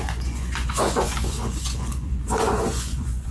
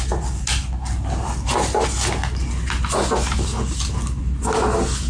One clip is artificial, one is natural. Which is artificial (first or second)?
first